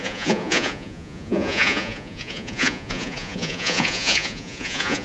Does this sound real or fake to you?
fake